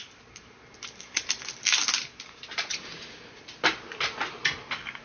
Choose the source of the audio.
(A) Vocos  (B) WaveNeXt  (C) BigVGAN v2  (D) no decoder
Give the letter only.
D